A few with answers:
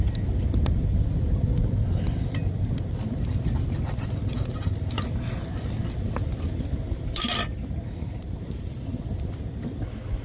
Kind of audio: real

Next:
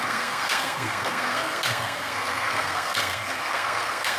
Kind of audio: fake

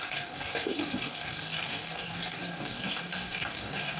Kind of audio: fake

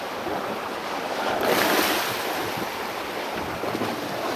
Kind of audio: real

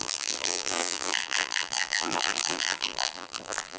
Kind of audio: fake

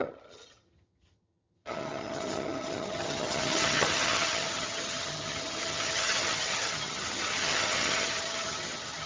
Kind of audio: fake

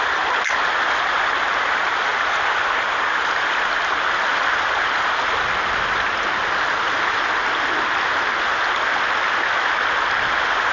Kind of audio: real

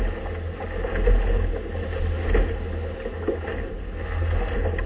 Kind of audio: real